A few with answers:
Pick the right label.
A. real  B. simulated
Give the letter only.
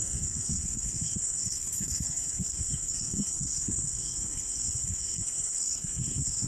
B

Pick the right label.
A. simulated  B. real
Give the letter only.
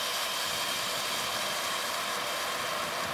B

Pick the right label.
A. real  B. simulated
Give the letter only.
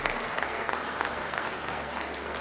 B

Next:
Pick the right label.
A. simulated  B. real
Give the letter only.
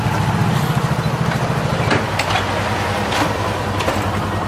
B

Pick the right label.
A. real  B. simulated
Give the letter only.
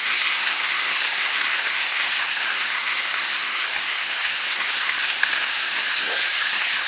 B